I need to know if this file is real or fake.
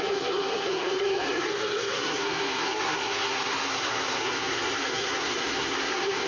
fake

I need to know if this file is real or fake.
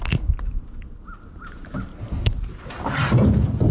real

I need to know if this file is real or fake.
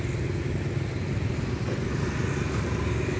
real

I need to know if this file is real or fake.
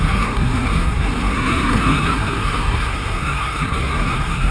fake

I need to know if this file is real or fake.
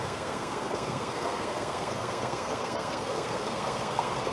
fake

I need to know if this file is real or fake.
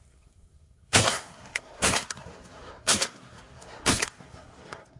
fake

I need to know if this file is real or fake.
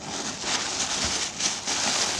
real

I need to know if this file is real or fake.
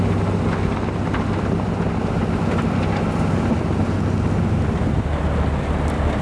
real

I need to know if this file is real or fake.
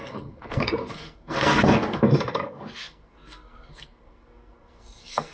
fake